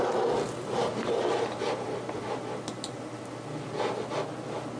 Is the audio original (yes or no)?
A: yes